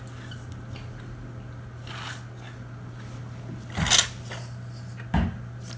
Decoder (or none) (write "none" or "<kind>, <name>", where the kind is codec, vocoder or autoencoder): none